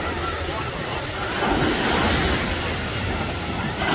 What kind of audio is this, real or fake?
real